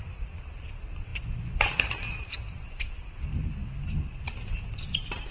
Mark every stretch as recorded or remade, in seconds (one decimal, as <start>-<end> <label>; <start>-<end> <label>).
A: 0.0-5.3 remade